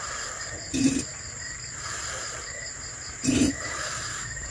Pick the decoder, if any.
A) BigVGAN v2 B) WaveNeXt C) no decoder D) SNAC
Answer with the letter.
A